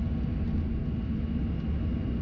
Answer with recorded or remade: recorded